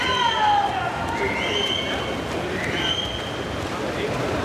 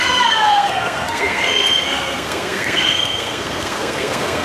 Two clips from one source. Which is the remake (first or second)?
second